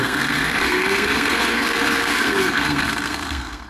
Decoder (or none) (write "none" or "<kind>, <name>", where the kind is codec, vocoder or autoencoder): codec, SNAC